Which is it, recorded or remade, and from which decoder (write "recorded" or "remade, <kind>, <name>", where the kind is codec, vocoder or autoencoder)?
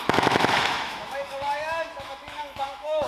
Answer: remade, autoencoder, DAC-VAE